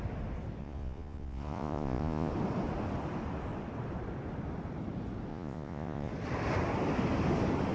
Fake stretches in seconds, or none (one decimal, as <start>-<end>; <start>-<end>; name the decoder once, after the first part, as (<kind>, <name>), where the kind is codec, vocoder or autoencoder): 0.6-2.3 (vocoder, Vocos); 5.3-6.1